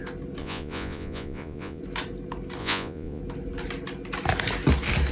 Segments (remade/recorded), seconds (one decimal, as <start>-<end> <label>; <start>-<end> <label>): 0.0-0.4 recorded; 0.4-1.8 remade; 1.8-2.6 recorded; 2.6-3.2 remade; 3.2-5.1 recorded